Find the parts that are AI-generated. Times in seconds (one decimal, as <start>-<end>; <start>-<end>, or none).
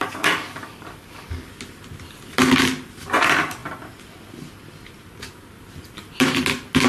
0.0-1.5